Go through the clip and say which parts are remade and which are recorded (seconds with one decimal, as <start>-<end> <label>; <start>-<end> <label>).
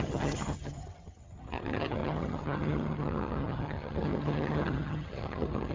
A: 0.0-5.7 remade